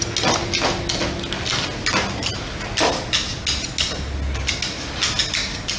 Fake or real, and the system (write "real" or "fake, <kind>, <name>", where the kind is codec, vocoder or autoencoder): real